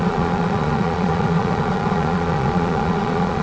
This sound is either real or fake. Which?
fake